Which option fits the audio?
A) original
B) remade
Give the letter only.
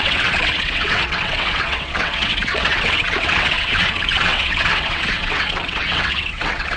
B